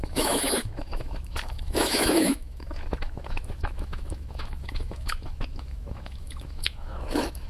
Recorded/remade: remade